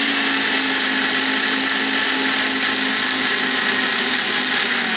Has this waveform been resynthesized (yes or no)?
no